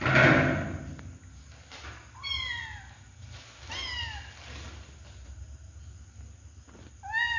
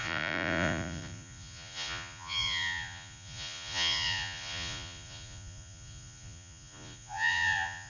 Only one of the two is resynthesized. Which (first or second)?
second